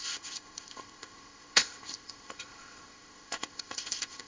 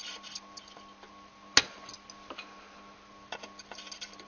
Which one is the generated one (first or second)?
first